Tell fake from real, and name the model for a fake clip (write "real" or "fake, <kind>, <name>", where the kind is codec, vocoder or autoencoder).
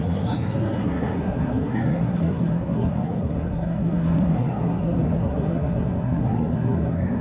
fake, codec, SNAC